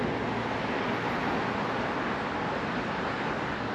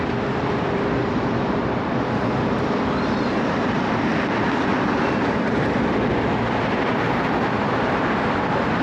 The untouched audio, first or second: first